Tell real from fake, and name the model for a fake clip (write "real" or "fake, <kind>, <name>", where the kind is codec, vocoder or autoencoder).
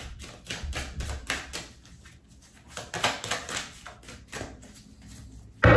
real